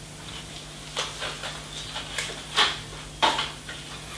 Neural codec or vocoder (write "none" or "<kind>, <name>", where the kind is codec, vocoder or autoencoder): none